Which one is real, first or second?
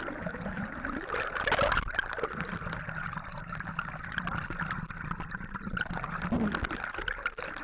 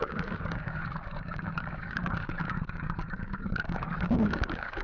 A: first